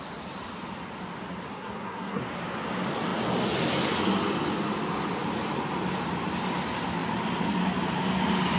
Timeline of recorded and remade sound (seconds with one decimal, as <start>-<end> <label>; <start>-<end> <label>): 0.0-1.5 recorded; 1.5-2.2 remade; 2.2-8.6 recorded